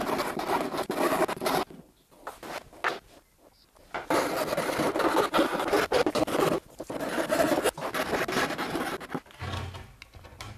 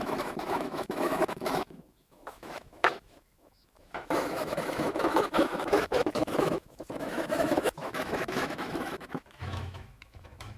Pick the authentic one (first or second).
first